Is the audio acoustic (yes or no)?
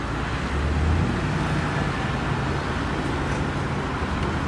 yes